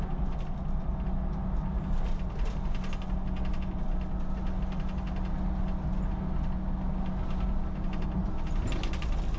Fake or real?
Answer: real